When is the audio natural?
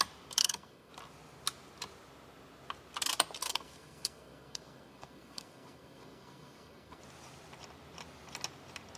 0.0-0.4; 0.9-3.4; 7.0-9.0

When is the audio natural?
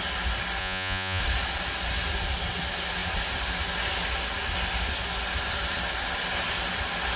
0.0-0.6; 1.2-7.2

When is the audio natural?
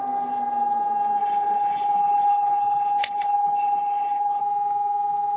0.0-1.2; 4.4-5.4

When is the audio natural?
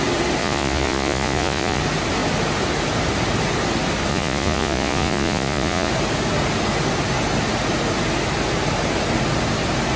0.0-0.4; 1.8-4.1; 5.9-10.0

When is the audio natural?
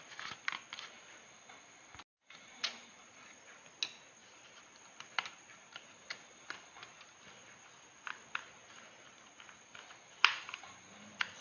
0.0-4.2; 6.5-11.4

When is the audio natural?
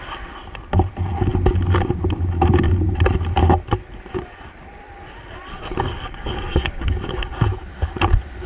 0.0-5.5; 7.3-8.5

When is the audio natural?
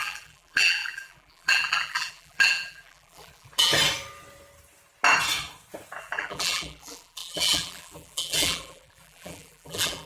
3.7-6.0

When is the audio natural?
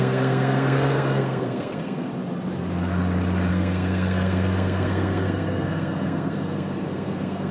2.1-3.5